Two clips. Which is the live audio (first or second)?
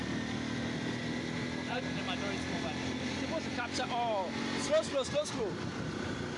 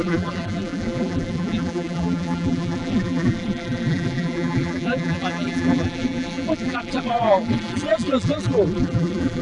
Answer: first